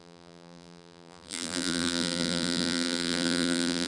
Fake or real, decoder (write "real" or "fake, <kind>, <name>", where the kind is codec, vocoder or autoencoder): fake, vocoder, BigVGAN v2